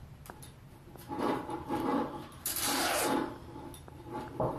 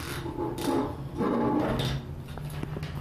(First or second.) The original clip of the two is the second